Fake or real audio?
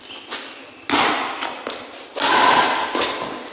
real